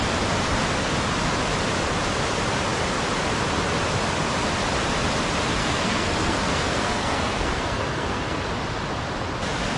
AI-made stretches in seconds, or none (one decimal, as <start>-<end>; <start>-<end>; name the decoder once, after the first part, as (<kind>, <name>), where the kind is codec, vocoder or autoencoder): 5.6-8.5 (codec, SNAC)